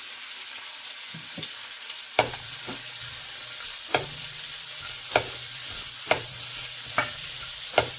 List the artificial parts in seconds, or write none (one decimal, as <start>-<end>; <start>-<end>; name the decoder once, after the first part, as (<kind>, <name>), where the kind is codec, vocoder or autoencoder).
0.0-8.0 (vocoder, BigVGAN v2)